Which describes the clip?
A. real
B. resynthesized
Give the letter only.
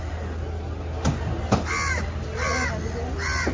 A